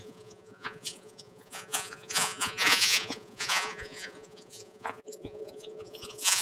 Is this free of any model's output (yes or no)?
no